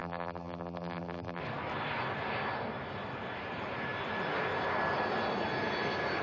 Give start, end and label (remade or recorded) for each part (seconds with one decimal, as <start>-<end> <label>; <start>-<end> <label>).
0.0-1.4 remade; 1.4-6.2 recorded